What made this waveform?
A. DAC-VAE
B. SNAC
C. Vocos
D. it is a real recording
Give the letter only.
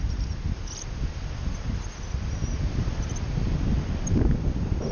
D